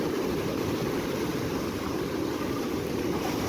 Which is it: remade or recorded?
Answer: remade